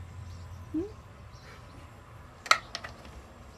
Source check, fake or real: real